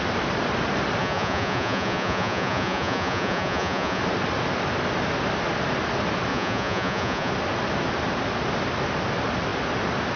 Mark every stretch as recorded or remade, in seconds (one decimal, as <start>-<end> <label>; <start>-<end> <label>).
0.0-1.0 recorded; 1.0-4.0 remade; 4.0-6.3 recorded; 6.3-7.3 remade; 7.3-10.2 recorded